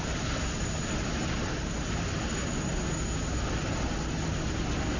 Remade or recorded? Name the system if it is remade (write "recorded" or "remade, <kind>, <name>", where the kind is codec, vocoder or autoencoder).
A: recorded